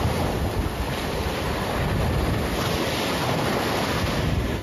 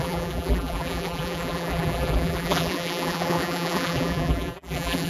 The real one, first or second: first